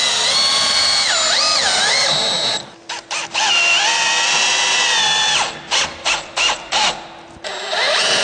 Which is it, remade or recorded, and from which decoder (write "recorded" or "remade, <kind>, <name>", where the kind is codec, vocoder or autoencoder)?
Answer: recorded